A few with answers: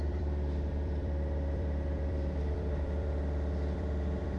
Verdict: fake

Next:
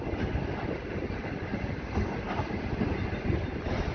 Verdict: real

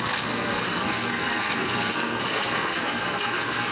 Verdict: fake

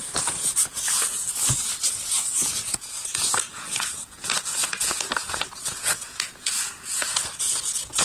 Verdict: fake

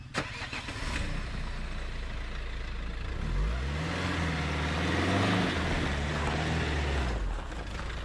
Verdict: real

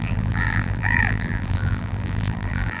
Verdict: fake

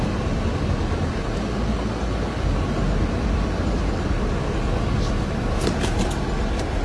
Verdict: real